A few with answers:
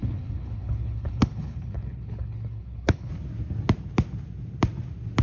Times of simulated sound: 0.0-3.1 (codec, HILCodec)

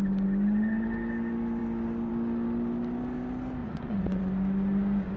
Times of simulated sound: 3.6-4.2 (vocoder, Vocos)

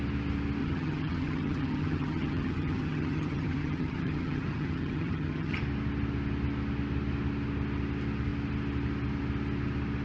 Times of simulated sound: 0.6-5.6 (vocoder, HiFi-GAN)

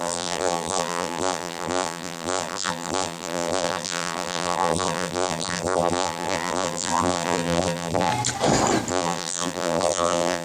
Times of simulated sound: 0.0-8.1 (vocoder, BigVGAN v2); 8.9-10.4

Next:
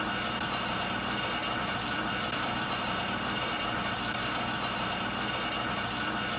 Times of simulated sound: 1.4-4.1 (vocoder, BigVGAN v2)

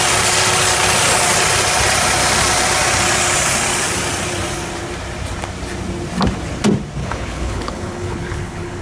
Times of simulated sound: 7.0-8.8 (codec, HILCodec)

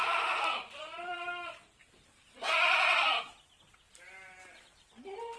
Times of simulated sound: 0.0-3.2 (vocoder, BigVGAN v2)

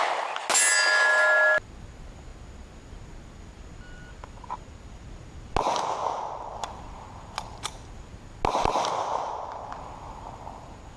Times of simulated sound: none